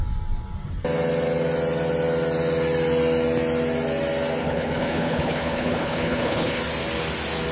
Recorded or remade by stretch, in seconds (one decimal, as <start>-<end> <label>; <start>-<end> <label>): 0.0-4.4 recorded; 4.4-6.6 remade; 6.6-7.5 recorded